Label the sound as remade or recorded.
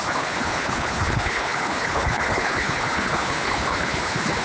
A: remade